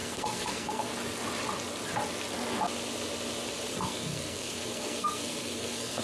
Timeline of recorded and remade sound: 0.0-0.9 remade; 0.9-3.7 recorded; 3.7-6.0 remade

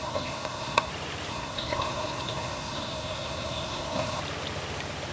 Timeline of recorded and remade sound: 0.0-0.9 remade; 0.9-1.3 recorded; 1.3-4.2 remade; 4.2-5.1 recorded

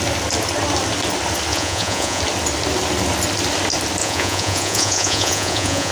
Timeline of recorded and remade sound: 0.0-1.5 recorded; 1.5-2.2 remade; 2.2-4.0 recorded; 4.0-5.9 remade

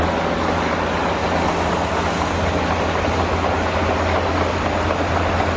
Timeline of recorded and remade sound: 0.0-5.6 recorded

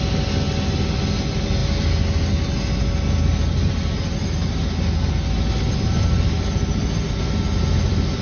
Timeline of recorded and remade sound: 0.0-8.2 recorded

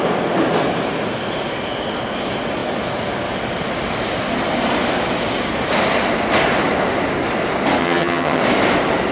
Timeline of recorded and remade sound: 0.0-7.8 recorded; 7.8-8.4 remade; 8.4-9.1 recorded